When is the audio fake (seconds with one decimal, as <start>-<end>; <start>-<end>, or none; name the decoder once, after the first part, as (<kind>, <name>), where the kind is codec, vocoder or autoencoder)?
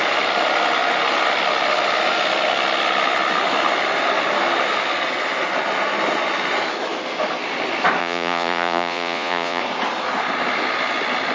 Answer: 8.0-9.6 (vocoder, Vocos)